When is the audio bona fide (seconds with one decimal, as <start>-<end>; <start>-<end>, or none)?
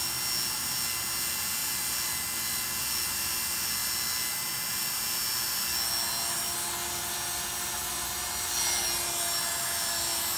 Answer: 0.0-10.4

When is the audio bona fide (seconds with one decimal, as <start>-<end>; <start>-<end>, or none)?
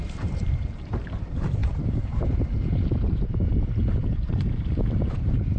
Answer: none